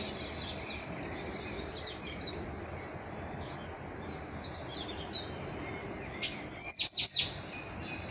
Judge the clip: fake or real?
real